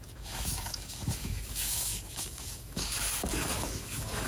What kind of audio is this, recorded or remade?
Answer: remade